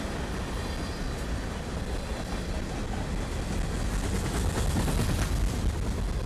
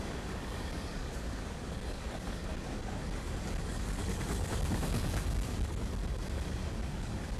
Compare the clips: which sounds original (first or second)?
first